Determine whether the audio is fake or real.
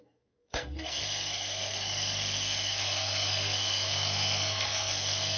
fake